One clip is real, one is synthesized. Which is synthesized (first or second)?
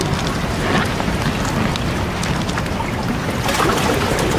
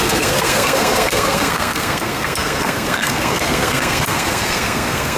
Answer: second